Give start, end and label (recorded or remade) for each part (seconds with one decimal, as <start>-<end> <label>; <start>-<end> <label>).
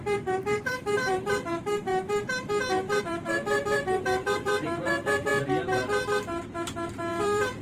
0.0-1.9 remade; 1.9-3.0 recorded; 3.0-5.3 remade; 5.3-7.1 recorded; 7.1-7.6 remade